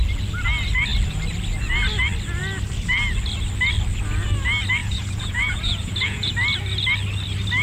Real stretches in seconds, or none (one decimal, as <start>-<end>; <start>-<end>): 0.0-4.8; 6.3-7.6